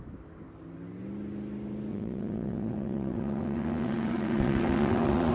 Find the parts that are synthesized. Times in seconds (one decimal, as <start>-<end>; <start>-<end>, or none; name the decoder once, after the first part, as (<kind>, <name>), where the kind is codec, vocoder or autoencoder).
1.9-5.3 (vocoder, WaveNeXt)